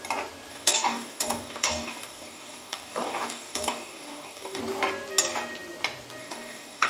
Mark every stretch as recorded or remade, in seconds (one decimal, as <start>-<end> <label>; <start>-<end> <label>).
0.0-0.5 recorded; 0.5-4.6 remade; 4.6-6.2 recorded; 6.2-6.9 remade